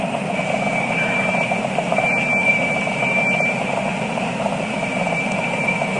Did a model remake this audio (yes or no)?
yes